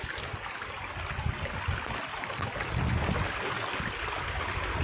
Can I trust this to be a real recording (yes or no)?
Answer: yes